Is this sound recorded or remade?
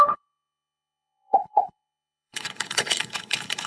remade